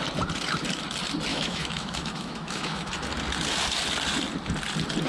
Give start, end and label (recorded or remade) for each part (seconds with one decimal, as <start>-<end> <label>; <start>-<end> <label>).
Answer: 0.0-1.3 recorded; 1.3-2.9 remade; 2.9-5.1 recorded